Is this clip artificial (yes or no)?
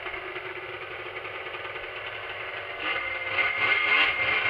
no